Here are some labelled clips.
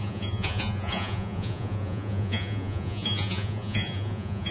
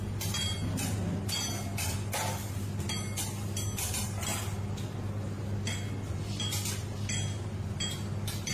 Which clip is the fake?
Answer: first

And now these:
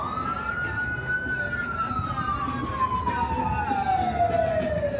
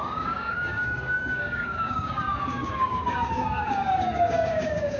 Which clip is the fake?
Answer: second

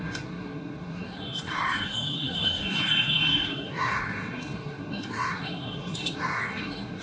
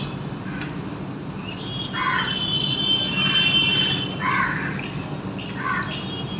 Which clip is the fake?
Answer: first